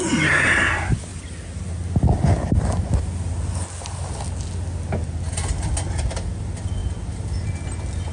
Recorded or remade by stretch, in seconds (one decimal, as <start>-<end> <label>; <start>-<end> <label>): 0.0-8.1 recorded